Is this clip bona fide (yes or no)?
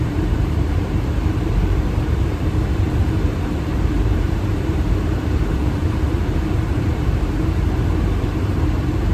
no